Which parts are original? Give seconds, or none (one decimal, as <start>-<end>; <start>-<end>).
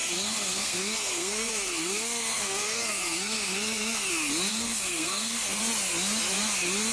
4.1-4.5; 5.6-6.9